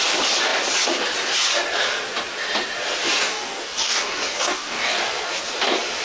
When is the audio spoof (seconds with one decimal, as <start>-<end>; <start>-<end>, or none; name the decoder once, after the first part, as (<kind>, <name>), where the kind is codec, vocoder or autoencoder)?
3.2-5.0 (codec, DAC)